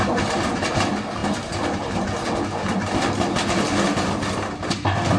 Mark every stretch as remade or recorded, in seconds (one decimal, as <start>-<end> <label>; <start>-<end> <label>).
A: 0.0-5.2 recorded